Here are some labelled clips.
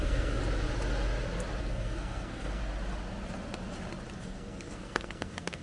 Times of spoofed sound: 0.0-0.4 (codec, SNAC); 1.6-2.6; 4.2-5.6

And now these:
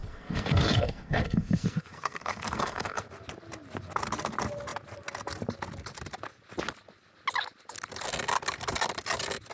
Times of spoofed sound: 0.0-3.1 (codec, SNAC)

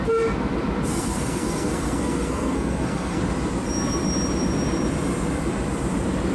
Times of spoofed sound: 0.9-3.2 (codec, SNAC)

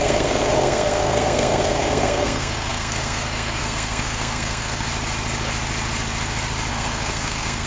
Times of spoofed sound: 0.0-4.9 (codec, SNAC); 6.7-7.7

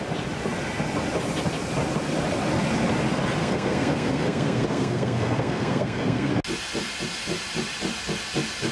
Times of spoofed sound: 3.4-6.3 (codec, SNAC)